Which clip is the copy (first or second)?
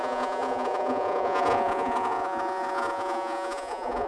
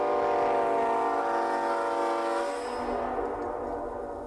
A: first